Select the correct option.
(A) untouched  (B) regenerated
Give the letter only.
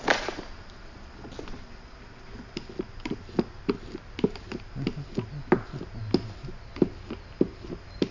A